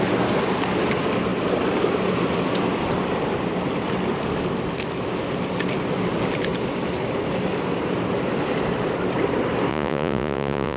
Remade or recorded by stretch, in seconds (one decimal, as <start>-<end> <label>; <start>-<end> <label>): 0.0-9.7 recorded; 9.7-10.8 remade

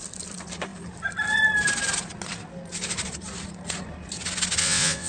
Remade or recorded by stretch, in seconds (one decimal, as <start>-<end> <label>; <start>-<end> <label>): 0.0-4.6 recorded; 4.6-5.1 remade

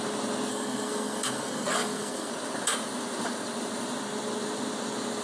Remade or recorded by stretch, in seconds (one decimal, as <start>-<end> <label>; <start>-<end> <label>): 0.0-0.5 recorded; 0.5-2.3 remade; 2.3-5.2 recorded

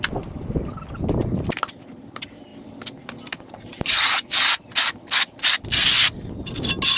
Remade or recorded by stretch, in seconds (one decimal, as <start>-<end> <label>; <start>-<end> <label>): 0.0-7.0 recorded

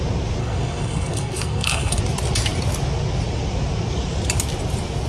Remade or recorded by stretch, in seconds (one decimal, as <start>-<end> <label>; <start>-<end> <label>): 0.0-0.4 recorded; 0.4-2.0 remade; 2.0-5.1 recorded

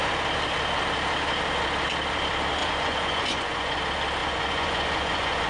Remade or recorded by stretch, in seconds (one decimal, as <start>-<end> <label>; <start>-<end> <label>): 0.0-2.6 recorded; 2.6-3.8 remade; 3.8-4.2 recorded; 4.2-5.5 remade

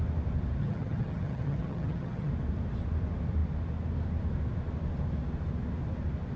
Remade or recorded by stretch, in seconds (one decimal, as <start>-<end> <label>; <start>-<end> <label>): 0.0-0.6 recorded; 0.6-2.3 remade; 2.3-6.4 recorded

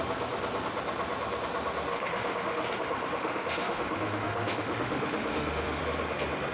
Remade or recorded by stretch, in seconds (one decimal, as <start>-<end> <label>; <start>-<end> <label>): 0.0-1.9 recorded; 1.9-5.8 remade; 5.8-6.5 recorded